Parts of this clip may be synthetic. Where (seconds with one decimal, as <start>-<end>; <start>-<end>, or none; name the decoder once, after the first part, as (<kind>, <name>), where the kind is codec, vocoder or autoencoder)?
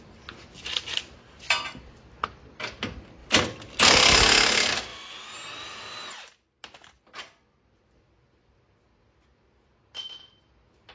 none